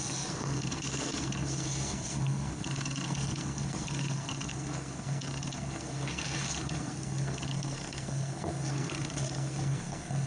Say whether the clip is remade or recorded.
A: remade